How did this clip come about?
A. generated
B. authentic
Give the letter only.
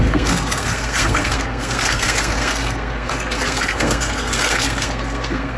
A